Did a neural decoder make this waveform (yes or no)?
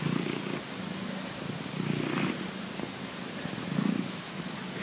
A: no